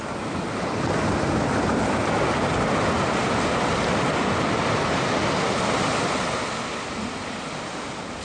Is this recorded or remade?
recorded